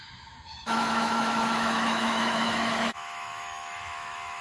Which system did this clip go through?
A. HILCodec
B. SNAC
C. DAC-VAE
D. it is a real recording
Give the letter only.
C